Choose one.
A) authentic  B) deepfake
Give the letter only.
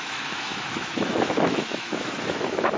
B